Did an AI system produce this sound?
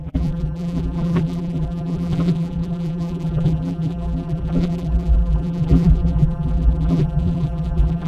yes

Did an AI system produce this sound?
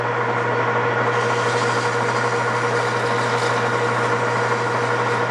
no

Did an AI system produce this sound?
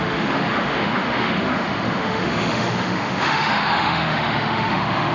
yes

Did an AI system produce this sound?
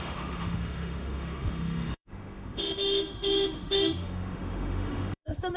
yes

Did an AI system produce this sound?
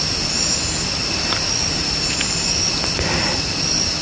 no